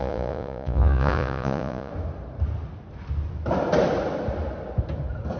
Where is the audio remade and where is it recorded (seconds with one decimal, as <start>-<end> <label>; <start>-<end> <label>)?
0.0-1.9 remade; 1.9-5.4 recorded